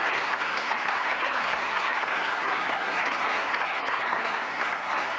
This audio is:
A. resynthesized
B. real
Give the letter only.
A